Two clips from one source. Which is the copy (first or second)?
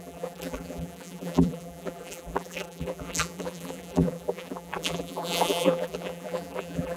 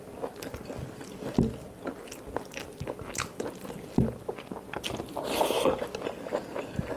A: first